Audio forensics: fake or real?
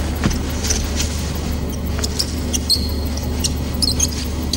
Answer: real